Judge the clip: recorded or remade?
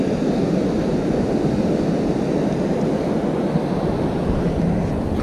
recorded